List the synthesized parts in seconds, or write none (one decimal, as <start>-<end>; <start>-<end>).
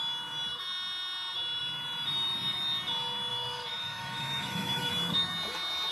3.3-4.9